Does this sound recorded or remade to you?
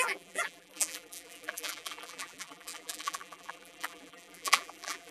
remade